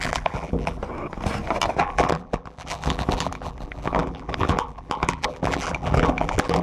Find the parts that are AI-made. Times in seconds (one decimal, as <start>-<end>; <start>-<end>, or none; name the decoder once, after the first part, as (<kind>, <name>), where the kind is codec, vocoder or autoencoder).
0.0-0.8 (vocoder, BigVGAN v2); 1.8-6.6